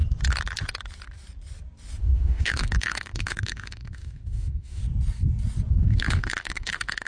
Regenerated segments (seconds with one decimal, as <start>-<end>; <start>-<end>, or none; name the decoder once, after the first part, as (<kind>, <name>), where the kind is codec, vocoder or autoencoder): 2.0-4.8 (autoencoder, DAC-VAE); 5.7-7.1